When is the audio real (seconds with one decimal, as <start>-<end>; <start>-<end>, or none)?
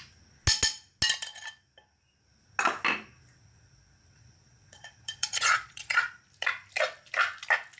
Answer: 0.0-3.1; 6.2-7.8